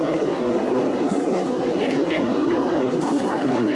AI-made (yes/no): yes